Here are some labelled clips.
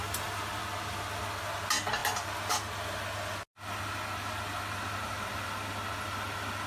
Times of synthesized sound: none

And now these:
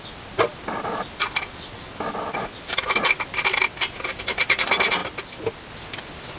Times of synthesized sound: none

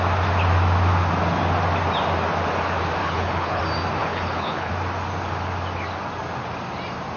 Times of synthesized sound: 3.0-3.6; 4.0-4.7

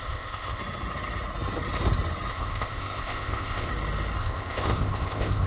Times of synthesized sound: 0.0-0.6; 2.3-3.7; 4.2-5.5

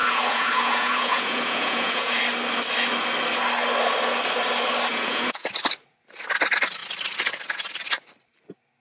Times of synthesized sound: 0.0-2.2; 4.9-5.5

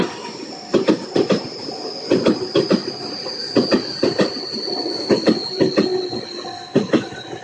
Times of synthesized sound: none

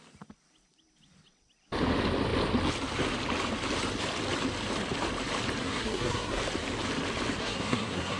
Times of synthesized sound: 5.6-6.4; 7.4-8.2